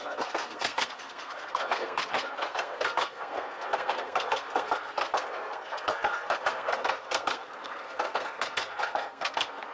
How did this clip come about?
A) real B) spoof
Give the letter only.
B